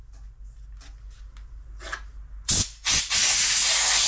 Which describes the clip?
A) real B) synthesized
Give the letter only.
A